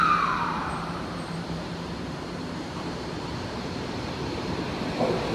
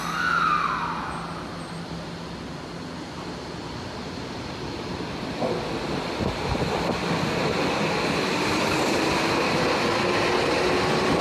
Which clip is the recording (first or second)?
second